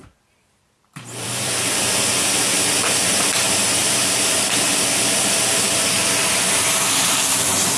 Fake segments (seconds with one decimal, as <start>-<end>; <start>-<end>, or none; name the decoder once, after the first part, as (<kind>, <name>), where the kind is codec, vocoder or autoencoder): 0.0-1.9 (vocoder, BigVGAN v2); 3.8-7.2